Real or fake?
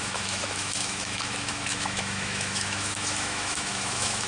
fake